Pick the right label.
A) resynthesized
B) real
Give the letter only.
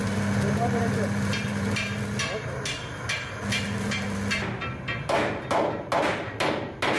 B